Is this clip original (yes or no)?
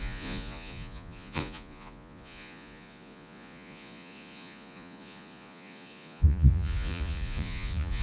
no